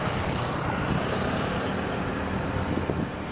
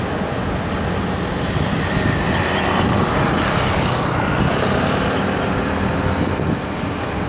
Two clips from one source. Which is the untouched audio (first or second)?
second